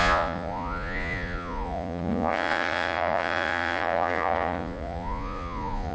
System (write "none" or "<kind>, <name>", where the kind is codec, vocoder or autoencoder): vocoder, Vocos